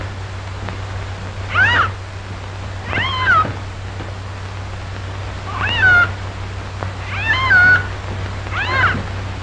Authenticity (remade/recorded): recorded